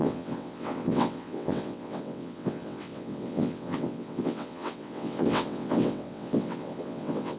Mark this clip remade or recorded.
remade